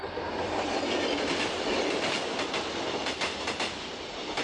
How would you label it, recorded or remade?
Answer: recorded